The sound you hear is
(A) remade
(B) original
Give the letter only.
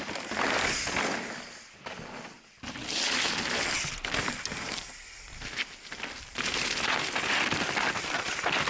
B